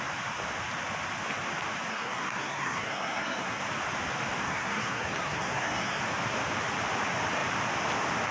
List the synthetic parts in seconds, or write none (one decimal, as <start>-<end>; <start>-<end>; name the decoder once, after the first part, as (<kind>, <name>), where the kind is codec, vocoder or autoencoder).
1.9-3.6 (codec, SNAC); 4.4-6.0

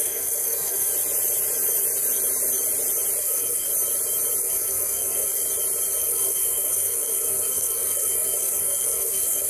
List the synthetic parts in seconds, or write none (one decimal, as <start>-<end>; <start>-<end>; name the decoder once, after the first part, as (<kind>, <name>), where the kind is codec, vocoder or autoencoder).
0.0-0.9 (codec, SNAC); 3.2-3.7; 4.4-5.4; 6.0-9.5

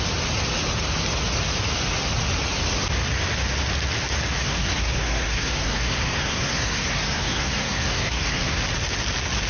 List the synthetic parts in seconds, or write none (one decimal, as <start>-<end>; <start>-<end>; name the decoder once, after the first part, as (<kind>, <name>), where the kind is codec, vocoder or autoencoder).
4.4-8.6 (codec, SNAC)

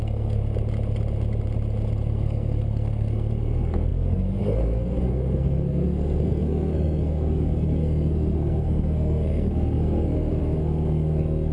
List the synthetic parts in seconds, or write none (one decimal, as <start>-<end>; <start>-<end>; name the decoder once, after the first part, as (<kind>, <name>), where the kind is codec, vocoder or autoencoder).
0.0-0.4 (codec, SNAC); 2.1-11.5

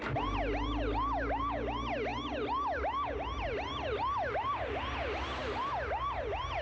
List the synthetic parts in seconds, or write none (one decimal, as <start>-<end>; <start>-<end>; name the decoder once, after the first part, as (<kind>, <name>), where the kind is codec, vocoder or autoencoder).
none

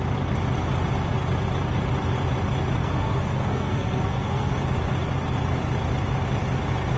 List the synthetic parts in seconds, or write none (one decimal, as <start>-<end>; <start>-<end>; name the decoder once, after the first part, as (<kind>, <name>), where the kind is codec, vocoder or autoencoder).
2.8-4.5 (codec, SNAC)

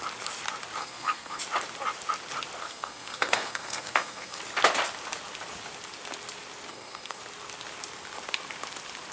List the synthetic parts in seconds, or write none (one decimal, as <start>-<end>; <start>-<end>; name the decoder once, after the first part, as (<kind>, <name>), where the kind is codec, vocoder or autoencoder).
0.8-1.4 (codec, SNAC); 2.6-4.4; 6.7-7.2